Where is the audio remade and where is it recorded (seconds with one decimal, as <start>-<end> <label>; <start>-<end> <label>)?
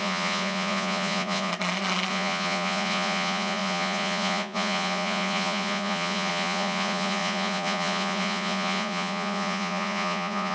0.0-1.5 remade; 1.5-2.1 recorded; 2.1-10.5 remade